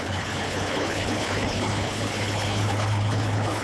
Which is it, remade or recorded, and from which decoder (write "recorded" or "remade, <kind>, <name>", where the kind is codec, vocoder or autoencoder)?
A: remade, codec, HILCodec